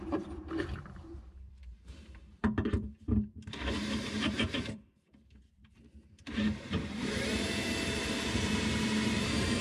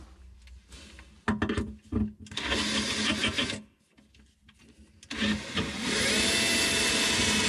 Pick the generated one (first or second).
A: first